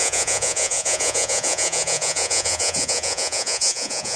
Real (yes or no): no